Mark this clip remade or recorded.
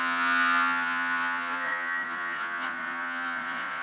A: remade